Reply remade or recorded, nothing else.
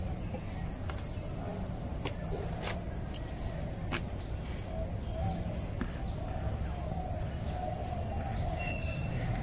recorded